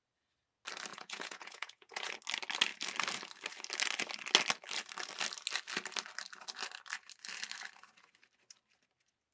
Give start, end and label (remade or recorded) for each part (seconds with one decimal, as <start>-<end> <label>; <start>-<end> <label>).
0.0-0.9 recorded; 0.9-2.1 remade; 2.1-9.3 recorded